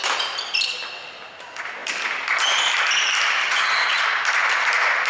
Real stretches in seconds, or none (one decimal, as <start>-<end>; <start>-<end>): 0.0-3.4; 4.0-5.1